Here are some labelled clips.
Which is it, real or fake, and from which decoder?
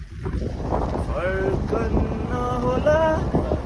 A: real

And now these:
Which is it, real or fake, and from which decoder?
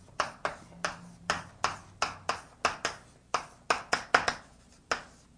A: real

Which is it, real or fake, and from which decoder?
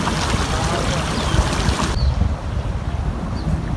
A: real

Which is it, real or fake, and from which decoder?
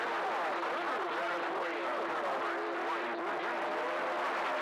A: real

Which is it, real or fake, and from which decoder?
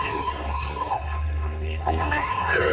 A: fake, codec, SNAC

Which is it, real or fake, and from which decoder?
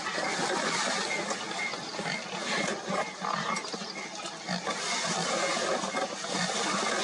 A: real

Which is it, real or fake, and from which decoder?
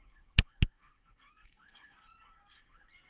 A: fake, codec, SNAC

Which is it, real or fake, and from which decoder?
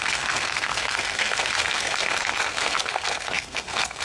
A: fake, codec, SNAC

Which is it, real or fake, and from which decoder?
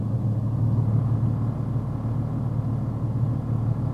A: real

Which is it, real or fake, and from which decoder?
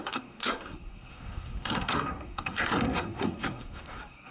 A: fake, codec, SNAC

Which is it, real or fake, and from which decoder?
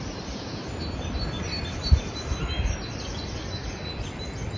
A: real